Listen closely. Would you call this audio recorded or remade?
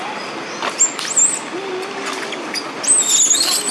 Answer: recorded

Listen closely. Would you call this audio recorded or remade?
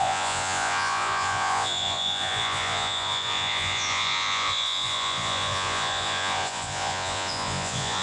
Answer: remade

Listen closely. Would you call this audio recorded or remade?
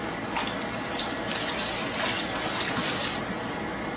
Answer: recorded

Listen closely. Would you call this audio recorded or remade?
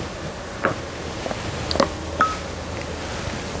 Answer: recorded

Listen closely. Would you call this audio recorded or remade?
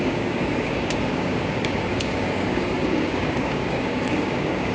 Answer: remade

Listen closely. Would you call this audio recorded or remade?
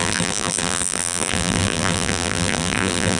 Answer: remade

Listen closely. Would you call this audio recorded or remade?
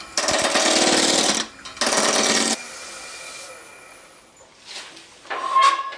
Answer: recorded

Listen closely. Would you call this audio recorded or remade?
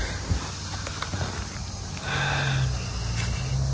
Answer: recorded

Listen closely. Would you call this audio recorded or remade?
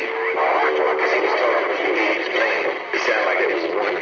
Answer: recorded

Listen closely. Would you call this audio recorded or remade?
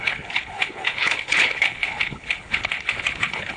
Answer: remade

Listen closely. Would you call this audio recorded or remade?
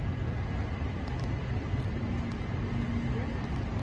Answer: recorded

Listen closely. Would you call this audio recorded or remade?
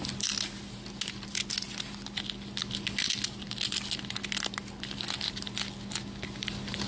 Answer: recorded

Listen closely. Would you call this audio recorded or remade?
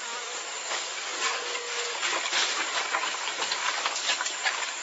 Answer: remade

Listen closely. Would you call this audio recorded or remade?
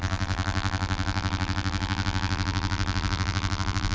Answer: remade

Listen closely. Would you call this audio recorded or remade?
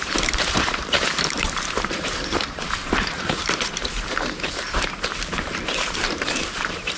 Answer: remade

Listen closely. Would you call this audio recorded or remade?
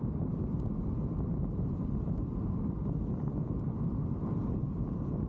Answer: recorded